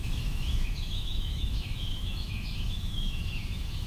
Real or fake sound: fake